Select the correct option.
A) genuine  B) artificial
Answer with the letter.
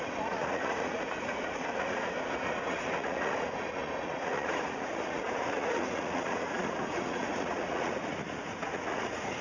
B